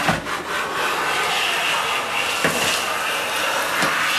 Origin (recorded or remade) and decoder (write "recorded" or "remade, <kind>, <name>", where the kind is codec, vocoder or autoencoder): recorded